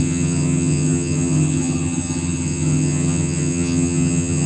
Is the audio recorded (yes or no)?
no